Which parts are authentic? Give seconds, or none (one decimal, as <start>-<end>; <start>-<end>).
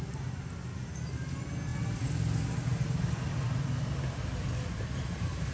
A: 0.0-5.5